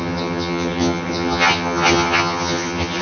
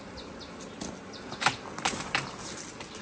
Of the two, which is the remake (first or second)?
first